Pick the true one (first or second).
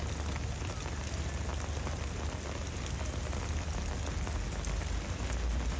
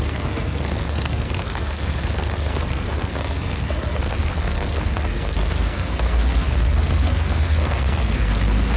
first